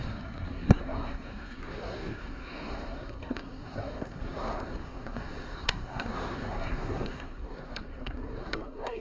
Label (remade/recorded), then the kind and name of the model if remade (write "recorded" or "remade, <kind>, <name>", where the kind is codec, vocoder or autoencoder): remade, codec, SNAC